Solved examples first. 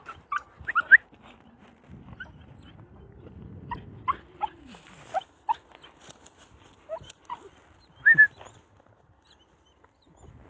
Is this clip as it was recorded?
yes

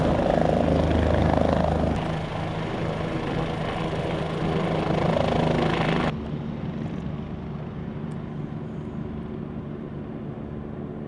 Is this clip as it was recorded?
yes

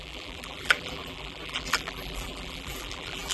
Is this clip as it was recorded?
no